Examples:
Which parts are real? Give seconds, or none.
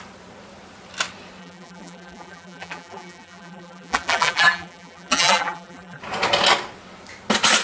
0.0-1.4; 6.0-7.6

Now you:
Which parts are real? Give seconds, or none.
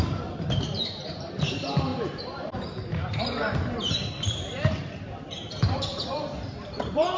none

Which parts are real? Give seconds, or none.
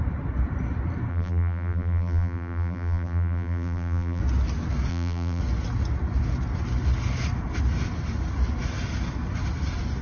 0.0-1.1; 4.2-4.9; 5.4-10.0